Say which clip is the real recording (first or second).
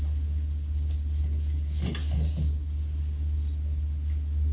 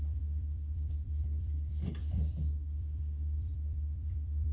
first